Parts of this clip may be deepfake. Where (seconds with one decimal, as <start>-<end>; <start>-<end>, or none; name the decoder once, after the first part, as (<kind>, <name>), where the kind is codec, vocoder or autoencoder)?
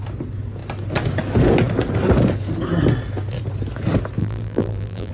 4.2-5.1 (vocoder, BigVGAN v2)